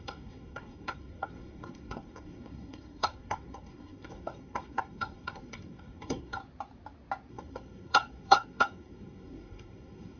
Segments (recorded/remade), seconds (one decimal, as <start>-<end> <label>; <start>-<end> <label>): 0.0-6.4 remade; 6.4-7.3 recorded; 7.3-10.2 remade